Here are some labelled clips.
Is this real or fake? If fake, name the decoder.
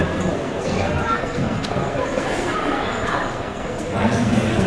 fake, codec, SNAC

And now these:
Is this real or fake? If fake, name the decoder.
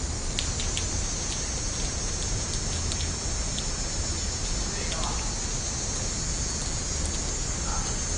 real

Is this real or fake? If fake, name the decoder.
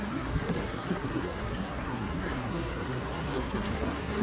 fake, codec, SNAC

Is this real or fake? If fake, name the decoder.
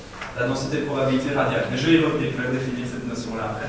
real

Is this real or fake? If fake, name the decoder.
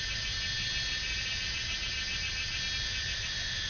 real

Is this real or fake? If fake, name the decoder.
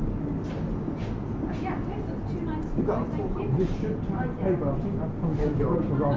real